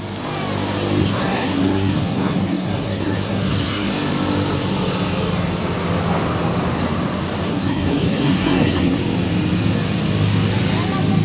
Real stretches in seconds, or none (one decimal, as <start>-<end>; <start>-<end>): 0.0-1.0; 3.9-7.5; 9.0-11.2

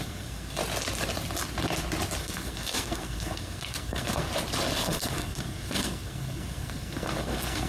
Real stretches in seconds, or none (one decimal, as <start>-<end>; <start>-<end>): 0.6-2.2; 4.3-4.8

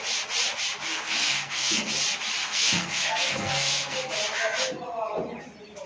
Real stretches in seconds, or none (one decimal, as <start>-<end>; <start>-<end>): 0.0-0.9; 1.9-2.4; 4.0-5.9